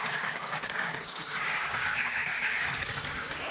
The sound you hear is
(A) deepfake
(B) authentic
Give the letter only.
A